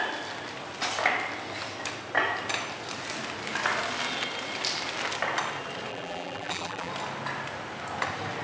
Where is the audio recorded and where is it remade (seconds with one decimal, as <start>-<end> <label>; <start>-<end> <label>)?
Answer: 0.0-5.9 recorded; 5.9-6.9 remade; 6.9-8.4 recorded